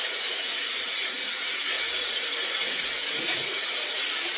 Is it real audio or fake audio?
fake